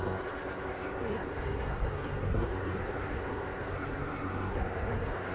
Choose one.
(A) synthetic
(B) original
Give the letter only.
A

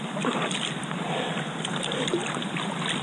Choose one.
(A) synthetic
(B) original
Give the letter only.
A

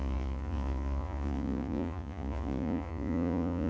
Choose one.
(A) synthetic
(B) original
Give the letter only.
A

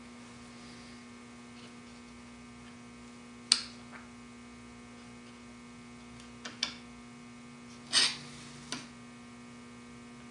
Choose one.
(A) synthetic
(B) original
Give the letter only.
B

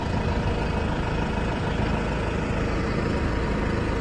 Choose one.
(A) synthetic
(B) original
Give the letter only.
B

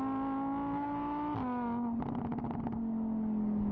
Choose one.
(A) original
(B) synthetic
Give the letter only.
A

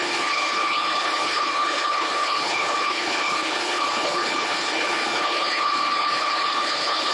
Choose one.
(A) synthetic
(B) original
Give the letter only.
A